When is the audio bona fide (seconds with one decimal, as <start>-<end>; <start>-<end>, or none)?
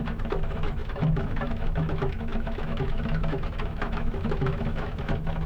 none